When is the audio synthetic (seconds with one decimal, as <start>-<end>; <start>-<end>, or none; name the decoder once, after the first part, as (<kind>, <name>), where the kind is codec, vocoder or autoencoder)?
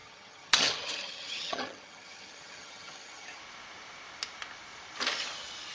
0.0-3.4 (vocoder, HiFi-GAN)